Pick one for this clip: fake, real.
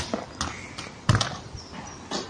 real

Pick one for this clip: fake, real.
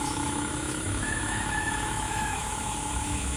fake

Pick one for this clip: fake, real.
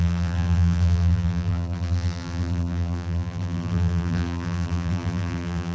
fake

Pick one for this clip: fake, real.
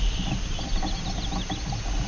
real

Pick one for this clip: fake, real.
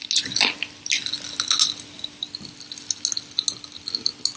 real